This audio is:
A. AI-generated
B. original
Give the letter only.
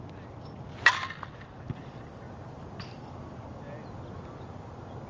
B